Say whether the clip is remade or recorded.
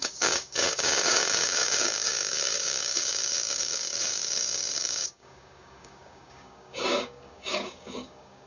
remade